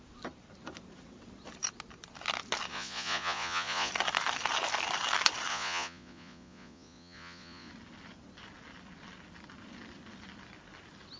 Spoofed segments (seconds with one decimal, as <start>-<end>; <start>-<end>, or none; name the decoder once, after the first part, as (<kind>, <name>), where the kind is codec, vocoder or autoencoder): 2.7-3.9 (vocoder, Vocos); 5.5-7.7